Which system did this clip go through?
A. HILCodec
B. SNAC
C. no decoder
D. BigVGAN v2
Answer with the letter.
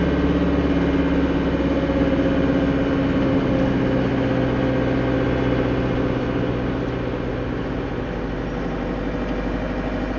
C